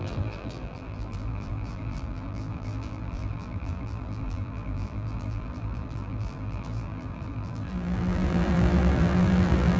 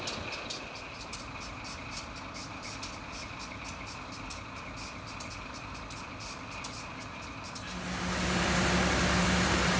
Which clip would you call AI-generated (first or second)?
first